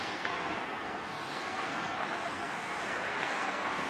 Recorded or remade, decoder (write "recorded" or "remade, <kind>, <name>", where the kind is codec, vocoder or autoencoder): remade, codec, SNAC